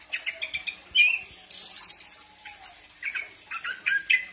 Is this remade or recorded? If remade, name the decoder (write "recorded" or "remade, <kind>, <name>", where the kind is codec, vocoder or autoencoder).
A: recorded